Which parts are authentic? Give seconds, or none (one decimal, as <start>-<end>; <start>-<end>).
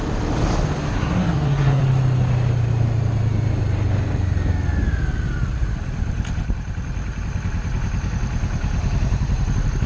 0.0-0.9; 1.8-9.9